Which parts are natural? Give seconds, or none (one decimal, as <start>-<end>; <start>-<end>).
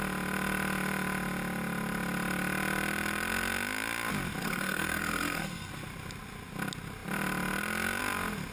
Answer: 0.0-4.4; 5.7-8.5